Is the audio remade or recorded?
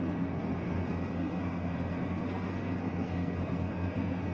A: remade